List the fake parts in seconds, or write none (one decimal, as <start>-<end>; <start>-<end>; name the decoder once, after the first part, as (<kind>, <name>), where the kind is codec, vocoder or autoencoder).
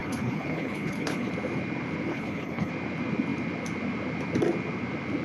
0.0-1.3 (codec, HILCodec); 2.1-2.7